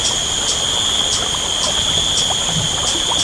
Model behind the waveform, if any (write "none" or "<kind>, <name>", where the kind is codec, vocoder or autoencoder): none